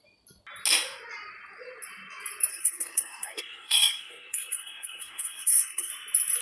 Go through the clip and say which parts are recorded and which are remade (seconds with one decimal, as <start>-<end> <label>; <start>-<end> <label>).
0.0-2.5 recorded; 2.5-5.9 remade; 5.9-6.4 recorded